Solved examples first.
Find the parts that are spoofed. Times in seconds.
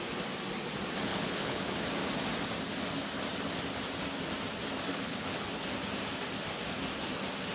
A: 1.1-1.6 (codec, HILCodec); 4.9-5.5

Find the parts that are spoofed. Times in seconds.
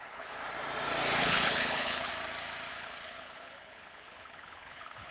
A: 0.0-0.4 (codec, HILCodec); 1.2-2.1; 2.7-5.1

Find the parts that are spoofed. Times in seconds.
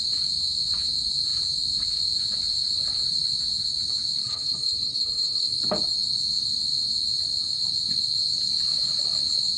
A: 4.2-5.6 (codec, HILCodec)